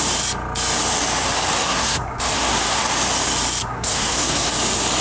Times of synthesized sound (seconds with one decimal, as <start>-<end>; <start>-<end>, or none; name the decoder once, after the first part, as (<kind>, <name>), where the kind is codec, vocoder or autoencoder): 1.6-2.8 (codec, SNAC); 3.6-4.5